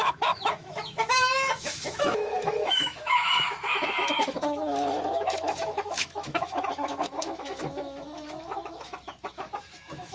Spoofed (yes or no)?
yes